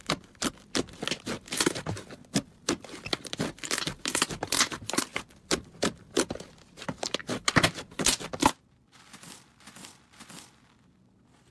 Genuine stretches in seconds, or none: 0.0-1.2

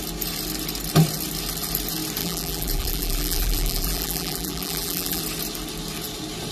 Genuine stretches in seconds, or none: 0.0-2.2; 5.2-6.5